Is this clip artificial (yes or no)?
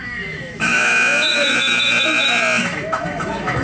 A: yes